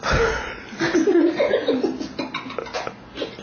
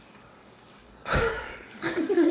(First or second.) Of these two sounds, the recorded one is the first